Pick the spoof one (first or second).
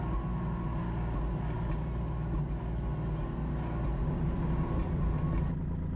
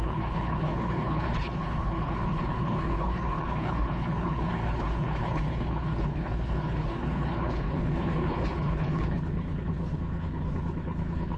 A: second